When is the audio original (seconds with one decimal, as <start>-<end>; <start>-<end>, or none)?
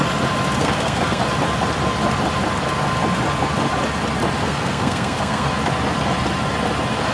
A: 0.0-0.6; 1.2-4.4; 5.5-7.1